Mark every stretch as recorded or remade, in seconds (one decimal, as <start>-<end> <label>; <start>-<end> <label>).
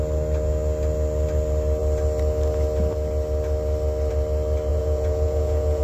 0.0-4.7 recorded; 4.7-5.8 remade